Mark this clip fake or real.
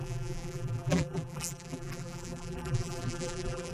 fake